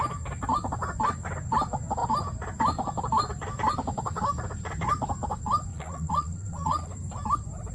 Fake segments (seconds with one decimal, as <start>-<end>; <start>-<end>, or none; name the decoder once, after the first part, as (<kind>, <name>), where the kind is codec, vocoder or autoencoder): 5.7-6.9 (vocoder, Vocos)